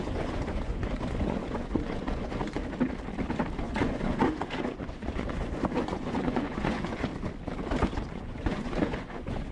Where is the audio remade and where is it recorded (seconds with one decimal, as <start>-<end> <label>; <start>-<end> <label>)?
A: 0.0-2.6 remade; 2.6-3.6 recorded; 3.6-7.1 remade; 7.1-8.1 recorded; 8.1-9.5 remade